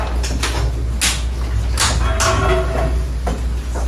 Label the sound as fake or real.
real